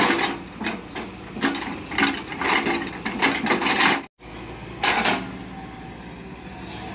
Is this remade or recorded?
recorded